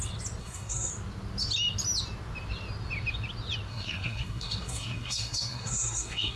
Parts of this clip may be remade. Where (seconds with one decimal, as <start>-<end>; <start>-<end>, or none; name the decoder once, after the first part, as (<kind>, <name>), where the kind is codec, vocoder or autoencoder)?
0.4-0.9 (codec, SNAC); 3.7-6.4